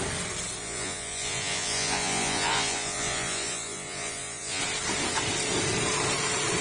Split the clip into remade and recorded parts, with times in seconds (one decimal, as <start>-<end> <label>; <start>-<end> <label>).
0.0-0.6 recorded; 0.6-4.6 remade; 4.6-6.6 recorded